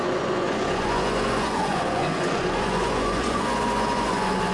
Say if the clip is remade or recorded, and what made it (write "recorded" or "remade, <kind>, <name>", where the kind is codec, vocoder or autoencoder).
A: remade, vocoder, Vocos